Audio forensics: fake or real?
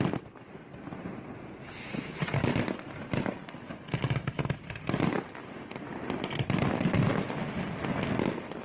real